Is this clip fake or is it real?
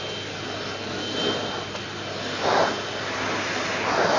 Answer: real